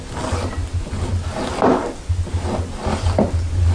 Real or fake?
real